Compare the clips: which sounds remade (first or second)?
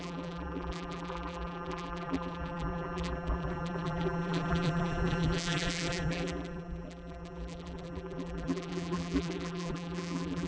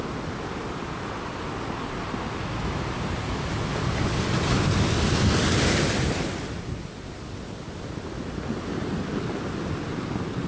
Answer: first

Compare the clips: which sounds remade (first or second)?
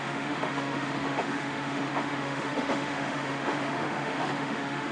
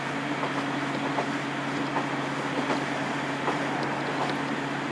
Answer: first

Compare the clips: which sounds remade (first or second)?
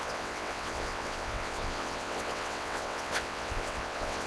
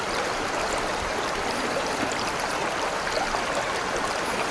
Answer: first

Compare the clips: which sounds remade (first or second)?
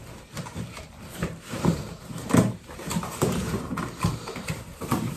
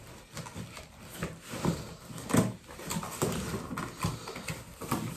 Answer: first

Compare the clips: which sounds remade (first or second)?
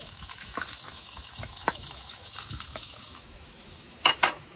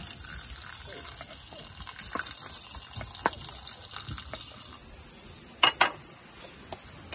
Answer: first